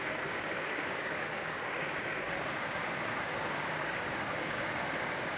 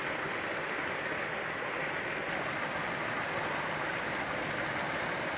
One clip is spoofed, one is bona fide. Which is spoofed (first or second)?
first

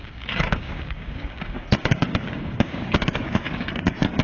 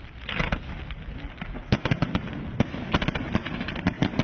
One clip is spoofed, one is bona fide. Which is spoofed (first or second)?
first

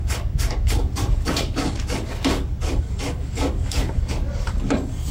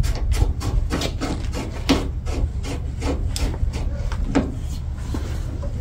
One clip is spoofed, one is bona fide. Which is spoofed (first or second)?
first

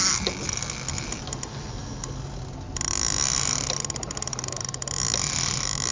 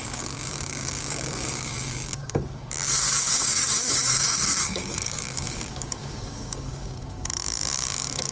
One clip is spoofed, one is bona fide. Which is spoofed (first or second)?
second